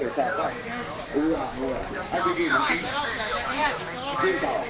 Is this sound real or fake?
fake